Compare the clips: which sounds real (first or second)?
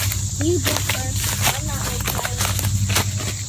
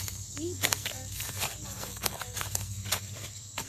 first